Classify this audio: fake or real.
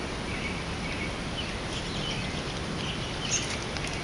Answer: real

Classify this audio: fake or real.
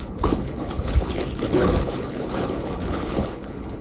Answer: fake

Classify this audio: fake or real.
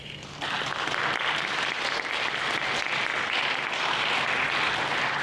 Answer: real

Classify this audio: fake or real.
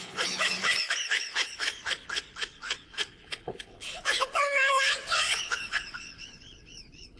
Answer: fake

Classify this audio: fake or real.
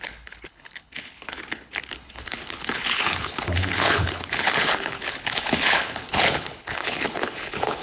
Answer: fake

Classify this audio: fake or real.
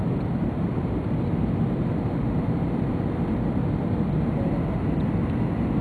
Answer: real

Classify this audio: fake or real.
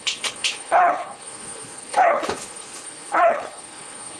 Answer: fake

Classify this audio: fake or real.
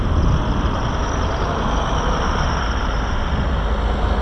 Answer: real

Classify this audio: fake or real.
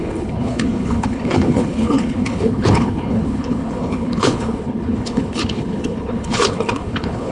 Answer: fake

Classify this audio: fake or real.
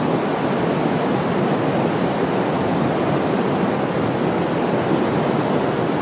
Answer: real